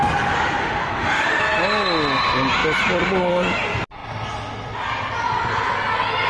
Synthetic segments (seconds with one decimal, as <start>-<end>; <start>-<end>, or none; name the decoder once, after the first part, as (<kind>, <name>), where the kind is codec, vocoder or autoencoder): 0.6-1.4 (autoencoder, DAC-VAE)